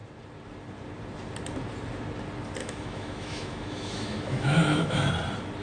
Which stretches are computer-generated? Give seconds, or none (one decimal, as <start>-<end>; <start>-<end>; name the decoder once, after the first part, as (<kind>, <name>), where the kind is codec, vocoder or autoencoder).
2.6-5.1 (autoencoder, DAC-VAE)